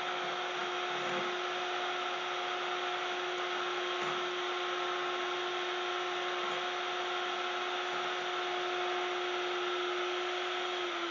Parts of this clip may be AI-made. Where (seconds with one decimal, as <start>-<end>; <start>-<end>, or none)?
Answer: none